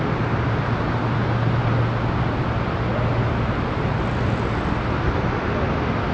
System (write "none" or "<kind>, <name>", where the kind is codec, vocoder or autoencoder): none